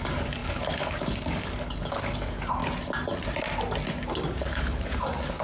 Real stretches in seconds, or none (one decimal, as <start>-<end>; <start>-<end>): 2.6-4.1